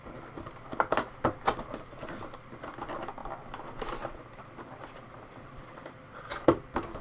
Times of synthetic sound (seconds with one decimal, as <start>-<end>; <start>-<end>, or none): 3.2-6.1